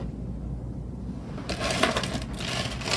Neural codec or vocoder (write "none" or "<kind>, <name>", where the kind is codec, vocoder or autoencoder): none